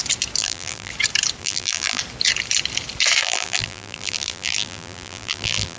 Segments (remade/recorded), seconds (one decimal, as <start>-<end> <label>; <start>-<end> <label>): 0.0-0.4 recorded; 0.4-0.9 remade; 0.9-1.4 recorded; 1.4-2.0 remade; 2.0-3.2 recorded; 3.2-5.8 remade

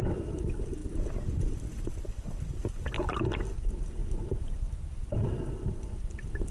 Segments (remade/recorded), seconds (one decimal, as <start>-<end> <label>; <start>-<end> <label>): 0.0-4.0 recorded; 4.0-5.3 remade; 5.3-6.5 recorded

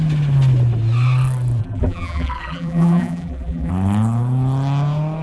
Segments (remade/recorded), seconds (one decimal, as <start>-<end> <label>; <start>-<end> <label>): 0.0-1.6 recorded; 1.6-3.7 remade; 3.7-5.2 recorded

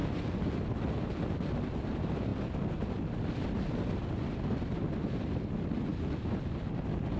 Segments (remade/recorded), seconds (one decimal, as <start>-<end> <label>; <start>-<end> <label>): 0.0-7.2 recorded

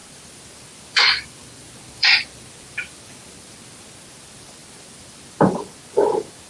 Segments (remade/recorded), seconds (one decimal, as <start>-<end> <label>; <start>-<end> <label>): 0.0-3.9 remade; 3.9-4.6 recorded; 4.6-5.7 remade; 5.7-6.5 recorded

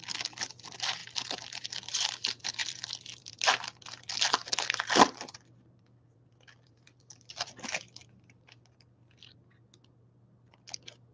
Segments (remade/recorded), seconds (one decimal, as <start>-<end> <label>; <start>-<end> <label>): 0.0-2.6 recorded; 2.6-7.7 remade; 7.7-11.1 recorded

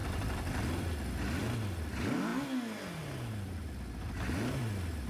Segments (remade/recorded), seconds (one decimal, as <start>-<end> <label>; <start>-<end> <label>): 0.0-0.6 remade; 0.6-5.1 recorded

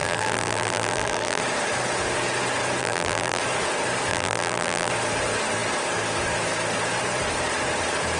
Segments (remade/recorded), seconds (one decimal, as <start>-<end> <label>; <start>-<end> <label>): 0.0-1.4 remade; 1.4-2.8 recorded; 2.8-3.4 remade; 3.4-4.1 recorded; 4.1-4.9 remade; 4.9-8.2 recorded